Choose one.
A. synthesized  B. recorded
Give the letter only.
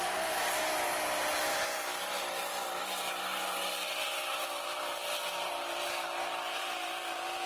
B